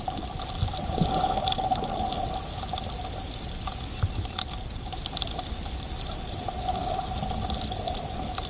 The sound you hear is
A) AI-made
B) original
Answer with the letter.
B